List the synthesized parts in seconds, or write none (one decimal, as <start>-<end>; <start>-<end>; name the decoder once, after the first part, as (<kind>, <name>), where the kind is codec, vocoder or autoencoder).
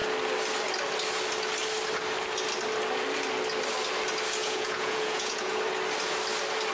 4.4-5.6 (vocoder, Vocos)